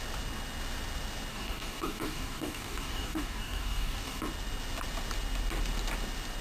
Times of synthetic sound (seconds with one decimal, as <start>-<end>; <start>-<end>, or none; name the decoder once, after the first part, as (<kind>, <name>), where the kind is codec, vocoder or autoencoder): 1.3-4.2 (codec, DAC)